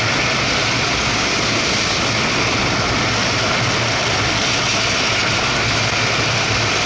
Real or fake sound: real